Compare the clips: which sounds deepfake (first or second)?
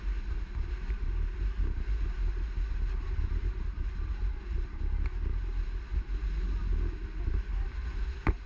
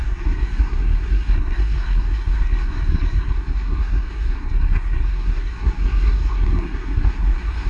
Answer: second